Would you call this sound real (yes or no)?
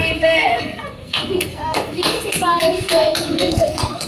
no